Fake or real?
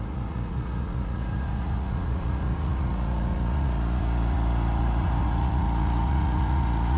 fake